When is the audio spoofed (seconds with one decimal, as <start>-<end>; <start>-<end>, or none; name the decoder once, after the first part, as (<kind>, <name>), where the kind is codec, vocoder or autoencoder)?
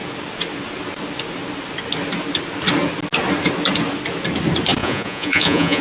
4.8-5.8 (vocoder, Vocos)